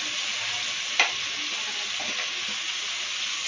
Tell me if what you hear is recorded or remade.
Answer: recorded